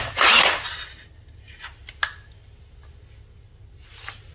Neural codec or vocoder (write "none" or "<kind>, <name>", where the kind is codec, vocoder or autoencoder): none